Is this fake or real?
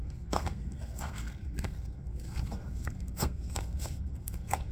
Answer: fake